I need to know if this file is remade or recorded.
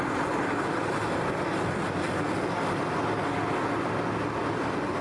recorded